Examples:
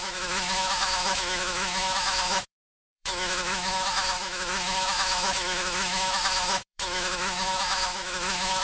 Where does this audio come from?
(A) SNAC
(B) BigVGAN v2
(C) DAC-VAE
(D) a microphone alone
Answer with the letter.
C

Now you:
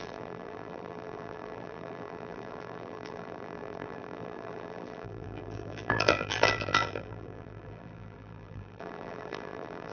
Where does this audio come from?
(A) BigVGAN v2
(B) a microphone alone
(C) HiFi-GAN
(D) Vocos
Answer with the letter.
A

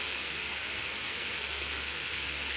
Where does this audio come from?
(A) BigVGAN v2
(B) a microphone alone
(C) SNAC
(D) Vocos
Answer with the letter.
C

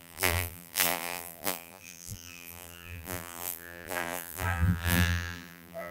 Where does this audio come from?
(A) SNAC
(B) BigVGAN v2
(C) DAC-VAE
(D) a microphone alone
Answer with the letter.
B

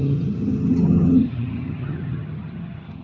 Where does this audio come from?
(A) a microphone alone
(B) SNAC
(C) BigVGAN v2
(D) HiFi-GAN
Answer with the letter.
D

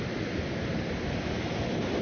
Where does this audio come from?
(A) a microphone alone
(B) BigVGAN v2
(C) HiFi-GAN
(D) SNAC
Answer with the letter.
A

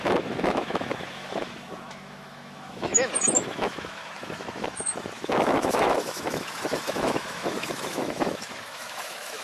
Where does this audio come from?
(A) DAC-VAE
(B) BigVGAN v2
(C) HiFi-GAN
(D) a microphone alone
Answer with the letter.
A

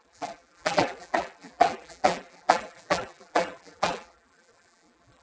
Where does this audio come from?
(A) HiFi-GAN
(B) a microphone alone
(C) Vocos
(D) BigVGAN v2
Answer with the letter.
D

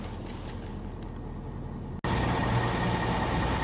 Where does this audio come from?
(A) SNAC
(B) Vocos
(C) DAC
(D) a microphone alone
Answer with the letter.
D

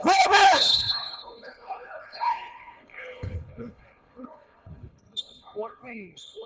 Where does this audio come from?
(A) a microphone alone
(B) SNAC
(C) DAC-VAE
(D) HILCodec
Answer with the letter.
D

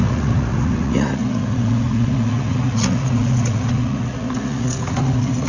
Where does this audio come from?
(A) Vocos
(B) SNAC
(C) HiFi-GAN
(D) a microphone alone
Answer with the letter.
A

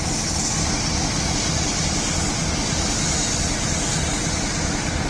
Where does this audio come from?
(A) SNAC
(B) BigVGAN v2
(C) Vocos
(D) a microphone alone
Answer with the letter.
D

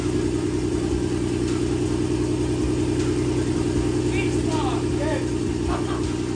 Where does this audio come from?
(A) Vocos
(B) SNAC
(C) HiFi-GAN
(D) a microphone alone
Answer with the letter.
D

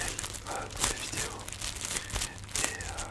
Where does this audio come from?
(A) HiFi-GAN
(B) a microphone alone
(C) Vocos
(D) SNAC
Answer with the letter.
B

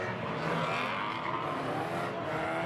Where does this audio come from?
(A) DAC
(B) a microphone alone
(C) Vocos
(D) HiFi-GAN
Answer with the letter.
B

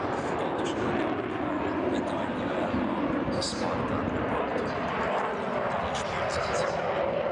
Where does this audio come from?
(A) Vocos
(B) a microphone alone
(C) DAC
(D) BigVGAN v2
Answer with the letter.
B